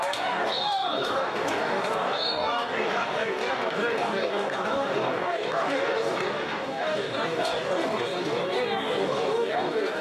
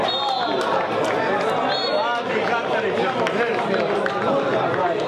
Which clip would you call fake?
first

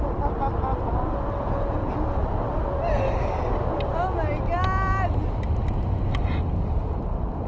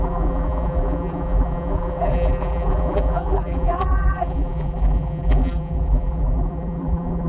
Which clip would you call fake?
second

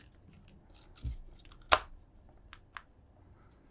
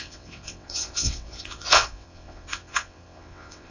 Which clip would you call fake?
second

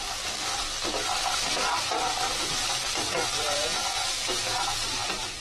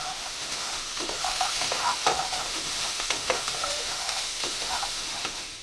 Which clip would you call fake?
second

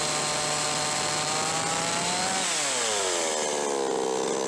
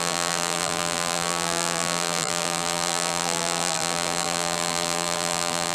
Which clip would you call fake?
second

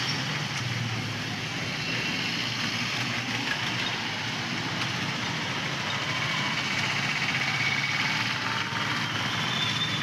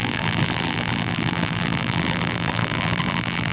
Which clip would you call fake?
second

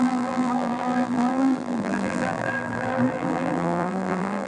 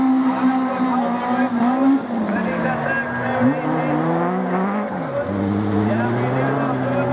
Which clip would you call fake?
first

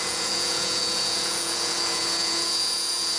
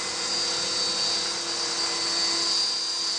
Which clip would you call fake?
first